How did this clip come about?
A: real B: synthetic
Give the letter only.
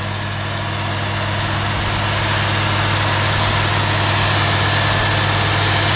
A